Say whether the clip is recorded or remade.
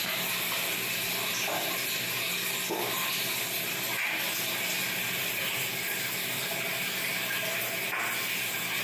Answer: recorded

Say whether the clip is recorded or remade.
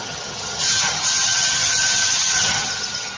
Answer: remade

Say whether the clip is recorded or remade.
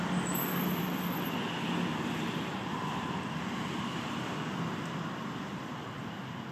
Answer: remade